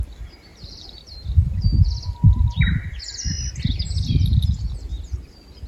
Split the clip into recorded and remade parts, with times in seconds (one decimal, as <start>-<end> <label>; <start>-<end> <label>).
0.0-0.5 recorded; 0.5-3.9 remade; 3.9-4.9 recorded; 4.9-5.7 remade